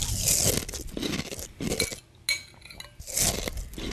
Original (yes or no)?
yes